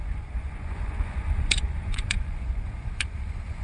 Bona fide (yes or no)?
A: no